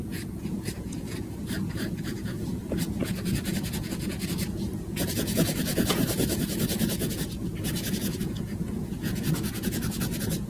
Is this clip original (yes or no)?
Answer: no